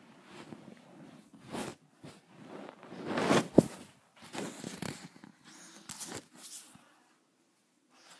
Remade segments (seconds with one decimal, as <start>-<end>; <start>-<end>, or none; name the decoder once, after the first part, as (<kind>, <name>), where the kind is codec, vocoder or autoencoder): 1.7-2.4 (vocoder, BigVGAN v2)